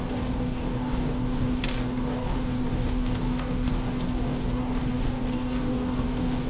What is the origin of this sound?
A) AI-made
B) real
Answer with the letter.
A